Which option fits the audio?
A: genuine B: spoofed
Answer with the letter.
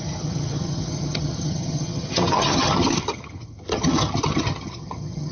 B